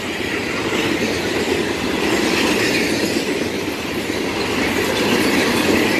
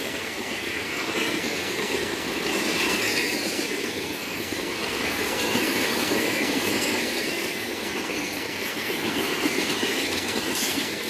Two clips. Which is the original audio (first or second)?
first